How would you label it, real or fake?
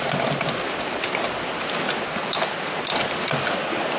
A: real